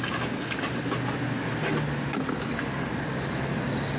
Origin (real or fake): real